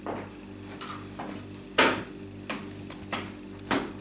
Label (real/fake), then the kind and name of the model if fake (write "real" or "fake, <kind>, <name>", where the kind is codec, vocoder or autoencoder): real